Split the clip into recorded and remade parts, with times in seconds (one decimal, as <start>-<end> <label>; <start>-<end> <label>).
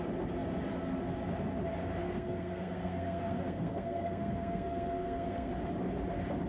0.0-2.0 recorded; 2.0-5.5 remade; 5.5-6.5 recorded